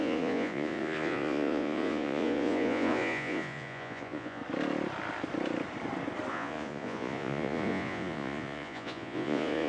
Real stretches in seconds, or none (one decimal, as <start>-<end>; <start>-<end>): 4.4-6.3